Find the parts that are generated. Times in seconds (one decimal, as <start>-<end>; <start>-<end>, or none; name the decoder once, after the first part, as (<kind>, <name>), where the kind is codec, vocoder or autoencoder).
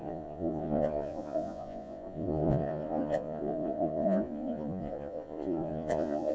0.0-6.3 (vocoder, Vocos)